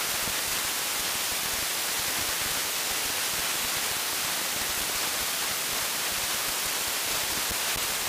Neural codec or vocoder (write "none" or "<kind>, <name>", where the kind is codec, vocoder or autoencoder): none